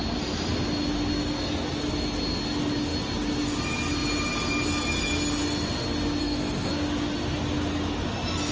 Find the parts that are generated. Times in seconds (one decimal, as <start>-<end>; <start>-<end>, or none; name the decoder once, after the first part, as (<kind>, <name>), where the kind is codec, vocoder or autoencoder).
6.2-6.7 (codec, SNAC)